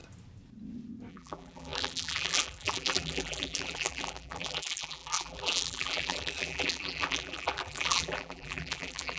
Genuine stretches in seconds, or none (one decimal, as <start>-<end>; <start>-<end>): 0.0-1.1